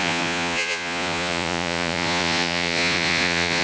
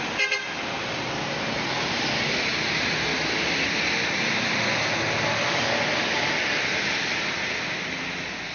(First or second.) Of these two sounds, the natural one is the second